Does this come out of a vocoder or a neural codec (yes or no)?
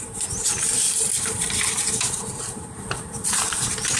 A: yes